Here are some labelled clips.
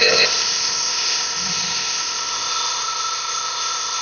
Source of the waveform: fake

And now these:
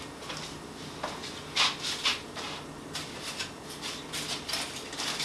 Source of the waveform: real